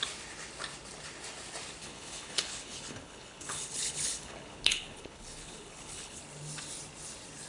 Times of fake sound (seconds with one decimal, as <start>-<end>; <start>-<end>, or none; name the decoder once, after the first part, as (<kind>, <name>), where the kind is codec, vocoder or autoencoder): 1.8-6.2 (codec, HILCodec)